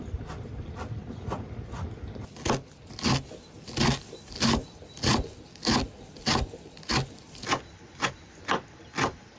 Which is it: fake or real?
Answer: real